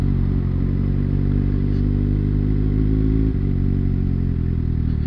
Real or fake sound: real